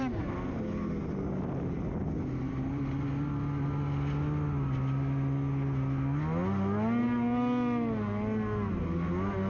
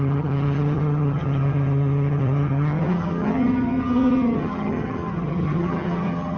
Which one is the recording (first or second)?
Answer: first